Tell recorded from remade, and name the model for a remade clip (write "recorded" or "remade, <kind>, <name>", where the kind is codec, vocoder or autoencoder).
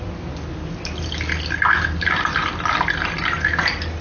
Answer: recorded